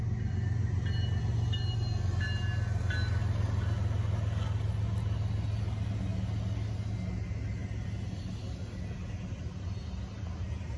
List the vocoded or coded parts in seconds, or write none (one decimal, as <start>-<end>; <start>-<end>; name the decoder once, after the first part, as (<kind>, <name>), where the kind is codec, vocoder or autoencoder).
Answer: none